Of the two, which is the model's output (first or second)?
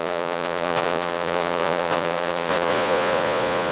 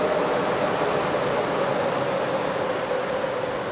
first